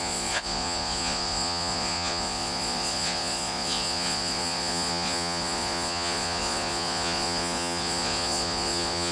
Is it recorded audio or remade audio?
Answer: remade